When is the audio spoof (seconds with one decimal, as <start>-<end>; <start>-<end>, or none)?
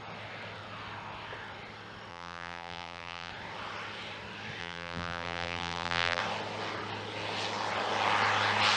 2.1-3.3; 4.6-6.2